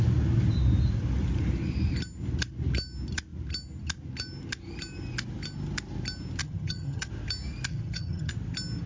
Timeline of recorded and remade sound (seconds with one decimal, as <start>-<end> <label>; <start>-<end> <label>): 0.0-6.4 recorded; 6.4-7.1 remade; 7.1-7.7 recorded; 7.7-8.3 remade; 8.3-8.9 recorded